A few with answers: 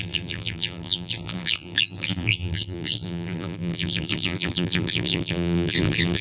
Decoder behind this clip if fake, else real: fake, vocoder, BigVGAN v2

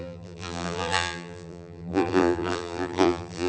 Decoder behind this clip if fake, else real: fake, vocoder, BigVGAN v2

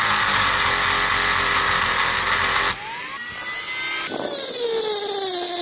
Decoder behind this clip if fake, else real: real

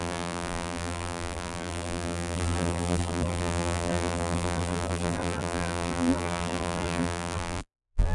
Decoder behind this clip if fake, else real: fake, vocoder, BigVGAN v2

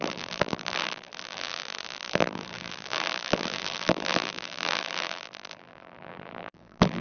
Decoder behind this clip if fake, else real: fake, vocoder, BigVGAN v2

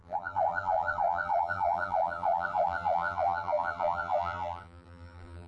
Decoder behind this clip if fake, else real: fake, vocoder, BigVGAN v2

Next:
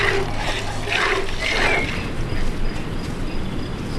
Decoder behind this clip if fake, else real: real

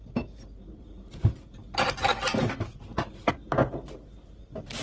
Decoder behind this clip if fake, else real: real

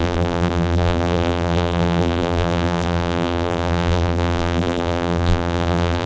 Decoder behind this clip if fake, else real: fake, vocoder, BigVGAN v2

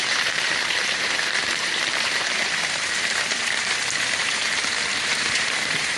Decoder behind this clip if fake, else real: fake, vocoder, BigVGAN v2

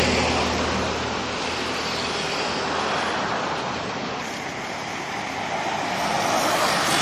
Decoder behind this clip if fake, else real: real